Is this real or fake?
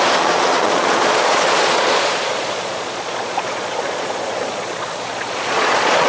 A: fake